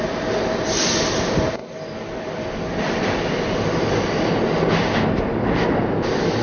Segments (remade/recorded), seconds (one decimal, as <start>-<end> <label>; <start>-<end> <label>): 0.0-6.4 recorded